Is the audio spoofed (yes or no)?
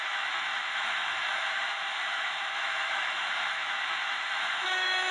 yes